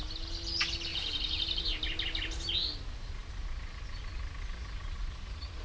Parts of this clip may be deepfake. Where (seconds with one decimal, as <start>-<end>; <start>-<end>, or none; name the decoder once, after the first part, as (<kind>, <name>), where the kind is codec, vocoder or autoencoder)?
0.9-1.6 (vocoder, BigVGAN v2); 5.0-5.6